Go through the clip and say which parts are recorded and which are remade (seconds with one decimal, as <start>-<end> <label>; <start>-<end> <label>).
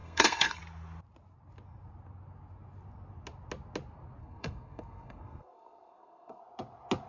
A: 0.0-0.6 remade; 0.6-4.2 recorded; 4.2-6.4 remade; 6.4-7.1 recorded